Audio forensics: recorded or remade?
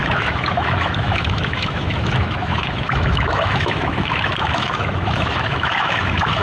remade